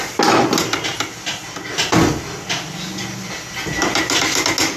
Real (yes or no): yes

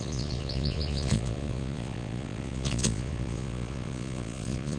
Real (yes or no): no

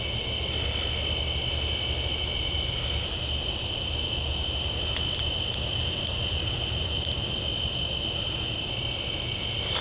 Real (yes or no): yes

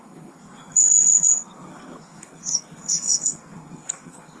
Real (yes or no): no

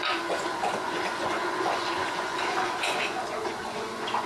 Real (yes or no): no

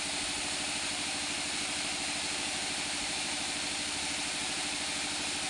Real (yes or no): no